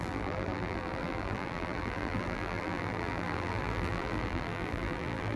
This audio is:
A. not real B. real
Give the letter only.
A